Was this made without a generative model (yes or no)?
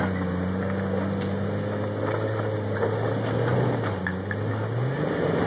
yes